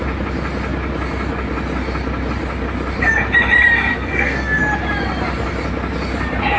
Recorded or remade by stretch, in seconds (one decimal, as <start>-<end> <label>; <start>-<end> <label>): 0.0-3.9 recorded; 3.9-4.6 remade; 4.6-6.6 recorded